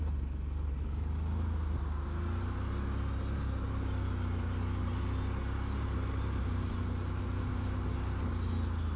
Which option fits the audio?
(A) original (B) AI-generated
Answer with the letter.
A